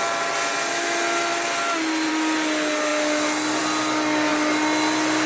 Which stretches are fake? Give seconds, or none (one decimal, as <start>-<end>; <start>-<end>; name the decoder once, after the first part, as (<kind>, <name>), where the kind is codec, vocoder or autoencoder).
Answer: none